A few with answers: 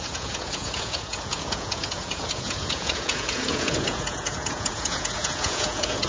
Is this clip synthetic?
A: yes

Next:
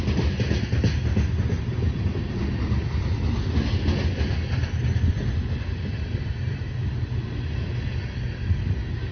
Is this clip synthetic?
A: no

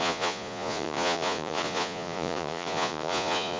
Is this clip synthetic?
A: yes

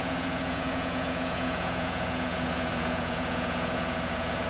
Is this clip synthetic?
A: yes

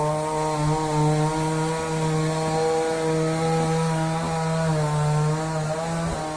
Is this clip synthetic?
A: no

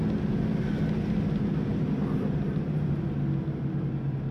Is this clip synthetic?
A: no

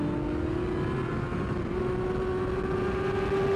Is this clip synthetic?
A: no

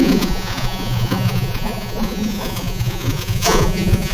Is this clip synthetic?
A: yes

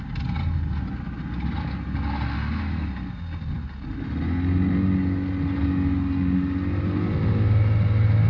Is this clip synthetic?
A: no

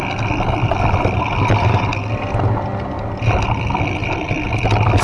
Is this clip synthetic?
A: no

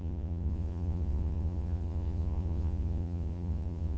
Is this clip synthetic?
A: yes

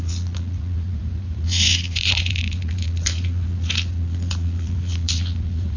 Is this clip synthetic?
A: yes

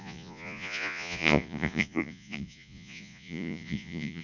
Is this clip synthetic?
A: yes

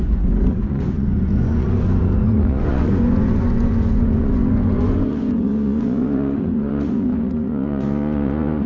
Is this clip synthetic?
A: yes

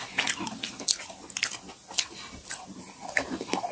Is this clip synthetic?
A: no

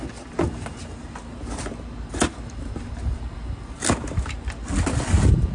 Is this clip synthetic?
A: no